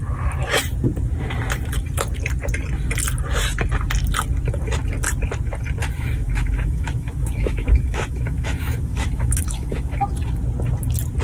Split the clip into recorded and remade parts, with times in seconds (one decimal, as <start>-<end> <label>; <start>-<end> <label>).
0.0-5.8 recorded; 5.8-10.0 remade; 10.0-11.2 recorded